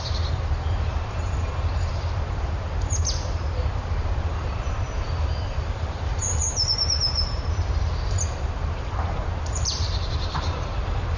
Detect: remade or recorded remade